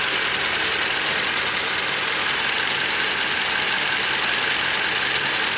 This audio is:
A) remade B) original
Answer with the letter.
B